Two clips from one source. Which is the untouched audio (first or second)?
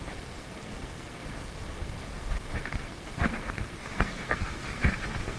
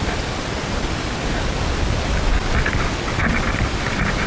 second